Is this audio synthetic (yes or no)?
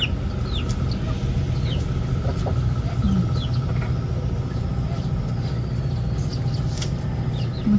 no